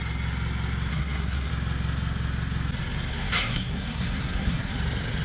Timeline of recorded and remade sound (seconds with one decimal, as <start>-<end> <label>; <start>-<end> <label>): 0.0-0.9 recorded; 0.9-1.5 remade; 1.5-3.1 recorded; 3.1-4.7 remade; 4.7-5.2 recorded